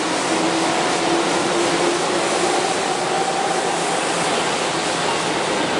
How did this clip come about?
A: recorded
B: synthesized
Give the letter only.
A